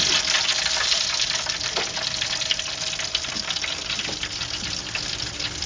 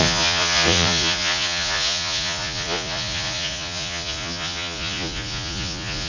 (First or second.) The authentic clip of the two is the first